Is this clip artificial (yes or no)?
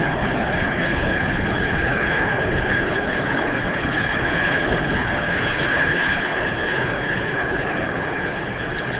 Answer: yes